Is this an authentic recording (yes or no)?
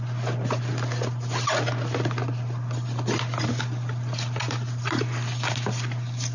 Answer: yes